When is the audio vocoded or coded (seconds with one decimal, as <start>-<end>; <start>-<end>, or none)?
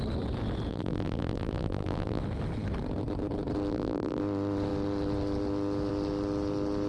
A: 0.7-2.2; 3.7-4.2